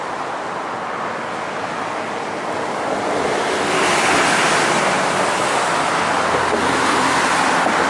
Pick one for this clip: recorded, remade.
recorded